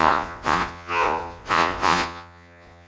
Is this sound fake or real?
fake